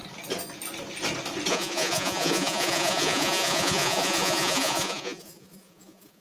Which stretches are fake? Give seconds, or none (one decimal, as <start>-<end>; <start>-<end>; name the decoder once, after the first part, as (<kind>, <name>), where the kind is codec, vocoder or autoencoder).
1.5-6.2 (vocoder, Vocos)